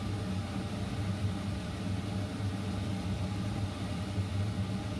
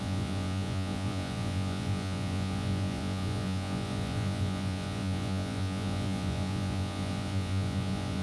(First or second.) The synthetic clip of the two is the second